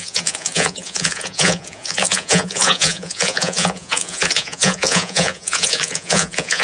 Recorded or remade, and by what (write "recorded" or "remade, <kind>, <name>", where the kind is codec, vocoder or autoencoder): remade, vocoder, Vocos